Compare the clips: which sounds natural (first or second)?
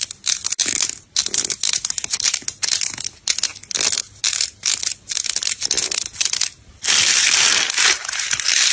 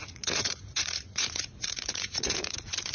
first